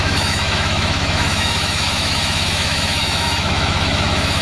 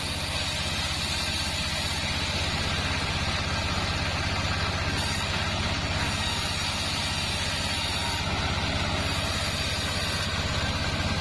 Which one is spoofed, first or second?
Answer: first